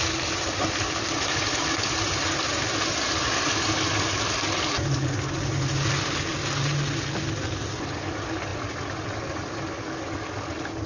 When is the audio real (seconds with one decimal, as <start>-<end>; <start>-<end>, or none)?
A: 0.0-10.9